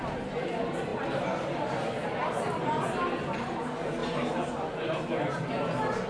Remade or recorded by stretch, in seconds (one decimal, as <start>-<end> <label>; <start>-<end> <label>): 0.0-6.1 recorded